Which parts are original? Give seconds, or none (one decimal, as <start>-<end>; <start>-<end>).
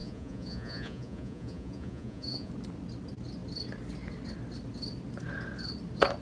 2.5-6.2